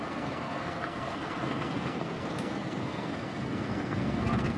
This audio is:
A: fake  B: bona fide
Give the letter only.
A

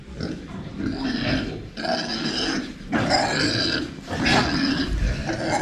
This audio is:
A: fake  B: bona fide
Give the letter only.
B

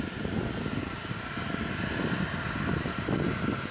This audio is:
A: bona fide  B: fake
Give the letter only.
A